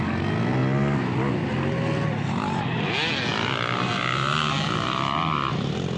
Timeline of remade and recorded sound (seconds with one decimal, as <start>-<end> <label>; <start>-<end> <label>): 0.0-6.0 recorded